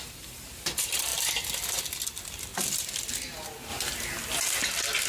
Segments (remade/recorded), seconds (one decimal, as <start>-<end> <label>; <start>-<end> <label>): 0.0-5.1 recorded